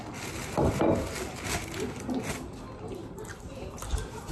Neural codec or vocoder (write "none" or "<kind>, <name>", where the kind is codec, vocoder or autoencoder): none